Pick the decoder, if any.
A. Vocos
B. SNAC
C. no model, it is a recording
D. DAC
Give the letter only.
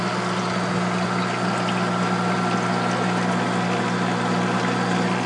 C